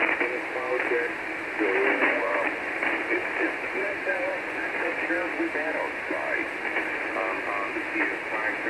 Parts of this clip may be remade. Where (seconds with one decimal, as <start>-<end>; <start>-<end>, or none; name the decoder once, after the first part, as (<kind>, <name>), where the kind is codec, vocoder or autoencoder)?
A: 2.0-2.7 (vocoder, Vocos); 3.2-5.0